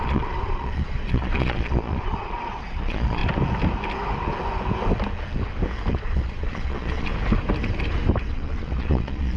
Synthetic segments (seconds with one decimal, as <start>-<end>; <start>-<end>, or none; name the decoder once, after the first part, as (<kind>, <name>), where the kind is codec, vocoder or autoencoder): 0.0-3.2 (vocoder, Vocos); 5.9-7.1; 8.3-9.4

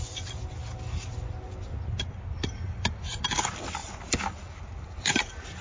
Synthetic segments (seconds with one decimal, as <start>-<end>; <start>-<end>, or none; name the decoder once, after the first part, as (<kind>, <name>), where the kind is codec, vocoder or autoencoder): none

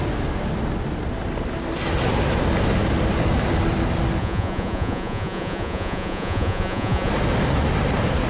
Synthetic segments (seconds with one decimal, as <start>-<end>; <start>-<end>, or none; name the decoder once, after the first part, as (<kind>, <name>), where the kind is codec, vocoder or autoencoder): 4.2-7.1 (vocoder, Vocos)

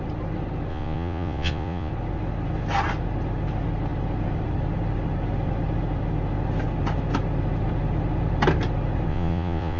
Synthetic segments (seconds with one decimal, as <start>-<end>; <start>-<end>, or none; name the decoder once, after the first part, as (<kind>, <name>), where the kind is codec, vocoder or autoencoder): 0.7-1.9 (vocoder, Vocos); 9.1-9.8

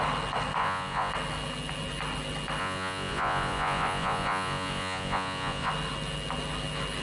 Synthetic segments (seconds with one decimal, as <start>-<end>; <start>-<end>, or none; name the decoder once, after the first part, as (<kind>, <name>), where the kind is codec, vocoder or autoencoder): 0.6-1.1 (vocoder, Vocos); 2.6-5.7

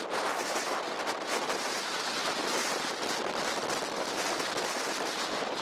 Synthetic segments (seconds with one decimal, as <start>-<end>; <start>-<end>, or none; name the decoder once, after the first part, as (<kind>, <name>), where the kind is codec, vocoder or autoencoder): none

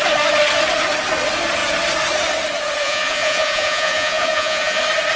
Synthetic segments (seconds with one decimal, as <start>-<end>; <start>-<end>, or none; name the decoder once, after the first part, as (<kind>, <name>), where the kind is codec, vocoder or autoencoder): 2.8-4.8 (vocoder, Vocos)